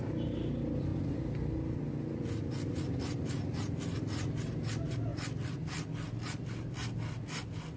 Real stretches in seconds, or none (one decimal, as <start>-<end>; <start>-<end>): 0.0-7.8

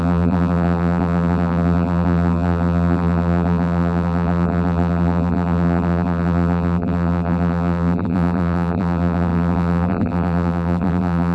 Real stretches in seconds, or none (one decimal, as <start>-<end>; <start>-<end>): none

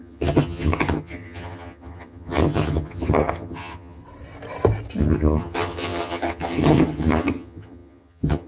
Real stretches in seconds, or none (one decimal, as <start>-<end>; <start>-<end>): 4.0-5.0

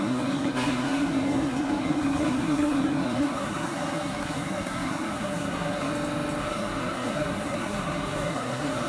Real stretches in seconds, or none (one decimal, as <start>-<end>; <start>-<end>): 5.9-6.4

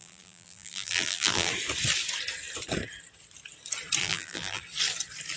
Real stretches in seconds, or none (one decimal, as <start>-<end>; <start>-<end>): 1.5-4.0; 4.6-5.4

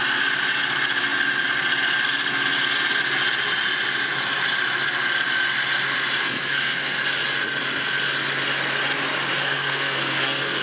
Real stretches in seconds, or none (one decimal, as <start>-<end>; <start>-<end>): 0.0-6.2; 7.0-9.4

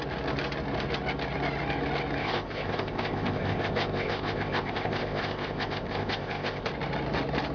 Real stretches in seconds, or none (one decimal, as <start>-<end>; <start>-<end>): 0.0-2.2; 6.7-7.5

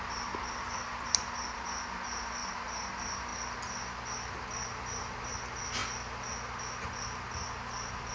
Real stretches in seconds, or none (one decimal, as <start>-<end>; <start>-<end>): 0.0-2.4; 2.9-8.1